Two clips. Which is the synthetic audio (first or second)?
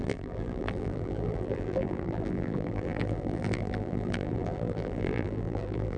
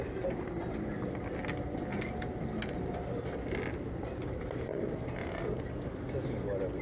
first